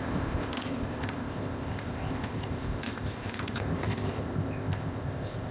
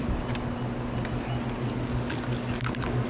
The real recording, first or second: second